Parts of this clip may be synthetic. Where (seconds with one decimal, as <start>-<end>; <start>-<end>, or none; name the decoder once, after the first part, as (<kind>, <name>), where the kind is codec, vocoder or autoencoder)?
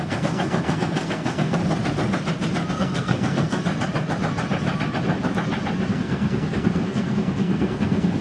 0.0-1.6 (codec, SNAC); 2.7-3.6; 5.9-8.2